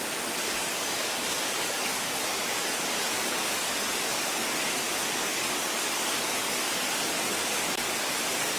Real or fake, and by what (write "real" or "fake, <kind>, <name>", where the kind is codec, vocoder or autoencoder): fake, codec, DAC